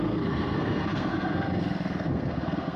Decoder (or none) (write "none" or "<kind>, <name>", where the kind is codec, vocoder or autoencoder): codec, SNAC